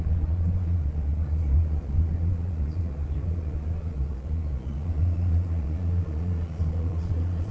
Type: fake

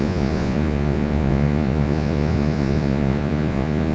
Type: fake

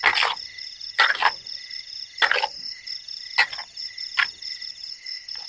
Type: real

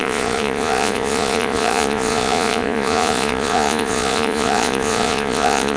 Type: fake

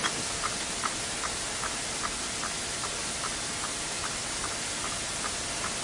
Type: real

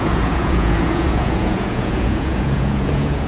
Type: fake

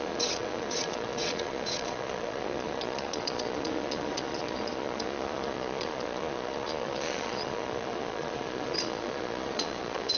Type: fake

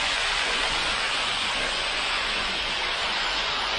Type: fake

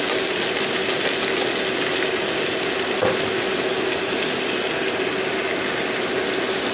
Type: real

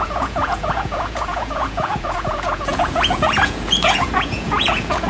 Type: fake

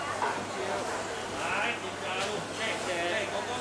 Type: real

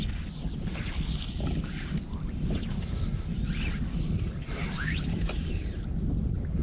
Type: real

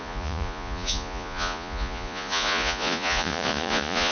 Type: fake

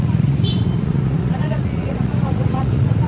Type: fake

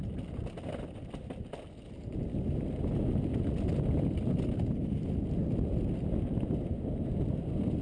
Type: real